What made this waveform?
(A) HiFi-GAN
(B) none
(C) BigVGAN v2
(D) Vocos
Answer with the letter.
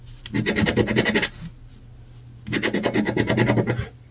B